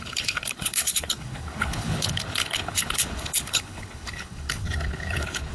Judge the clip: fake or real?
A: fake